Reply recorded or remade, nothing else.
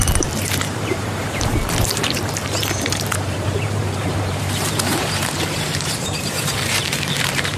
remade